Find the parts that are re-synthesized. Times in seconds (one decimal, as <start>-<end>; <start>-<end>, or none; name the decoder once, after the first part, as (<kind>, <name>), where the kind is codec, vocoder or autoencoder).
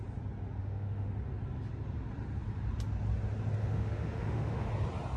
0.6-1.1 (autoencoder, DAC-VAE); 3.6-4.7